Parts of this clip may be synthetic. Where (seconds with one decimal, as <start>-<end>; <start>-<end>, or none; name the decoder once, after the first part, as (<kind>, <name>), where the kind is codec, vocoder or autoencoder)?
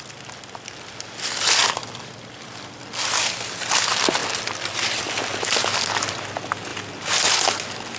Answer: 6.7-7.3 (vocoder, BigVGAN v2)